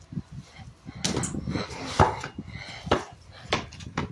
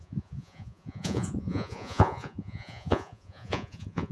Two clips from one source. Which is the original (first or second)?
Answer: first